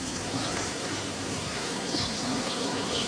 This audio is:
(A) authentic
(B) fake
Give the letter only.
B